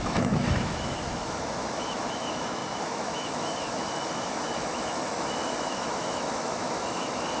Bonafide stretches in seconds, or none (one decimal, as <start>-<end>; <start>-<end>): none